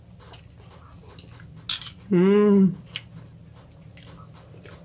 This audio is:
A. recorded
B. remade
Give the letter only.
A